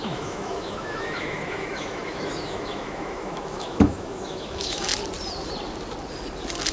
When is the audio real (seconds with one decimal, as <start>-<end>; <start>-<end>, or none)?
4.9-6.7